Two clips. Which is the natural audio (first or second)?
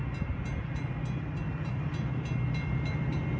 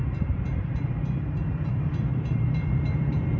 first